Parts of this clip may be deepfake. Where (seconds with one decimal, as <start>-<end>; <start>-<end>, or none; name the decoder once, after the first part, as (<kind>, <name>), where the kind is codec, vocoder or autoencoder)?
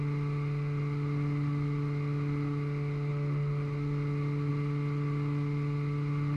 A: none